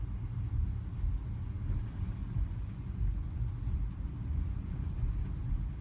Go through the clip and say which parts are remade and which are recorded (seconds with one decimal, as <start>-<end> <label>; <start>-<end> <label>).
0.0-2.2 recorded; 2.2-3.5 remade; 3.5-4.3 recorded; 4.3-5.2 remade; 5.2-5.8 recorded

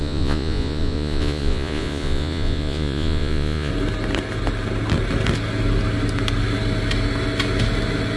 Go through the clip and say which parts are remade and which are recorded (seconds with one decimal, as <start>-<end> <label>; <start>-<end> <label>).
0.0-3.7 remade; 3.7-8.2 recorded